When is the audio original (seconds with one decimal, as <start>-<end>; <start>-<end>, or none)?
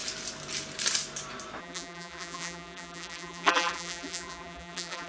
0.0-1.6